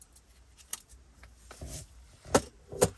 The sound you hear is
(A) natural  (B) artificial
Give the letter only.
A